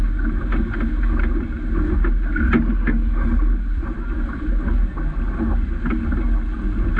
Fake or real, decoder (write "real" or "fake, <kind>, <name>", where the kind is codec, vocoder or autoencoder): real